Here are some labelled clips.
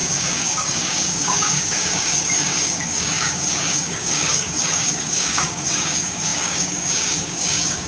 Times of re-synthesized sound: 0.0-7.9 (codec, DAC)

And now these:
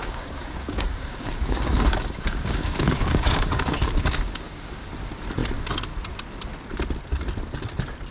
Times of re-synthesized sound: 0.0-4.9 (codec, DAC)

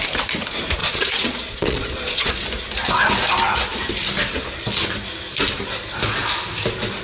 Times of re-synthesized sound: 0.8-2.3 (vocoder, Vocos)

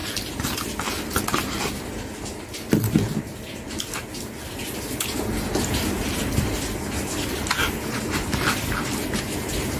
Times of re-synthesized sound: none

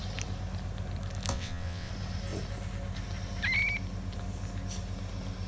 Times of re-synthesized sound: 1.3-1.9 (vocoder, WaveNeXt)